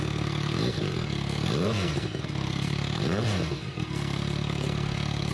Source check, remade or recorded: remade